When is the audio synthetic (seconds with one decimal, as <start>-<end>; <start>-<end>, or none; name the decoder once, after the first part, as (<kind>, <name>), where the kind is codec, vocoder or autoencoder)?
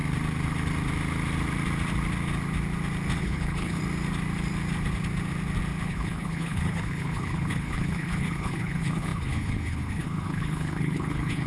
3.2-3.8 (codec, HILCodec); 5.9-11.5